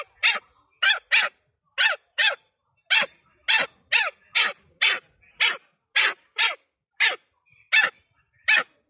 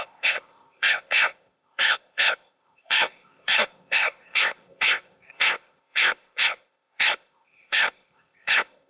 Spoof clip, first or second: second